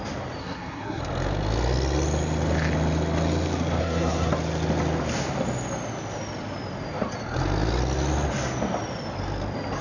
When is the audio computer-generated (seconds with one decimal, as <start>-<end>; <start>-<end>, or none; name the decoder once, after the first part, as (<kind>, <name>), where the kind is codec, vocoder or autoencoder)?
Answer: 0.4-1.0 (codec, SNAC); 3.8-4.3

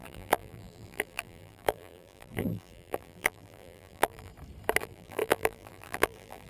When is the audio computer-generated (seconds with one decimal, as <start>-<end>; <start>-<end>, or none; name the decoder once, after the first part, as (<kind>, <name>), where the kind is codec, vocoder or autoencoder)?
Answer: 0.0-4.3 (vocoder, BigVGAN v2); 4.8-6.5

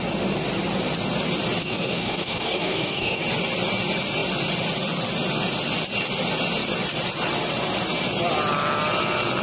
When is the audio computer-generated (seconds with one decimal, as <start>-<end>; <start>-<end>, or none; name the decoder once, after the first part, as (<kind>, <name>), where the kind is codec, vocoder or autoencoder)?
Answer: 1.6-3.2 (codec, DAC)